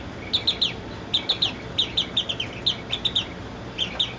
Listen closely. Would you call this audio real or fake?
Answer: real